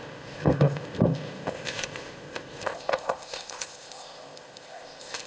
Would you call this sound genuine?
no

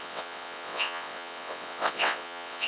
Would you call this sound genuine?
no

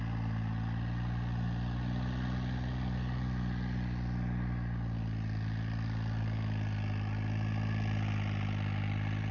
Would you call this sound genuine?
yes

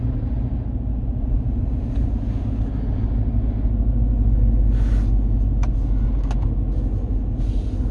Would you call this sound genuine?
yes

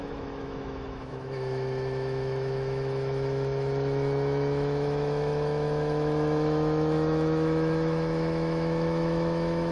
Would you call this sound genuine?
no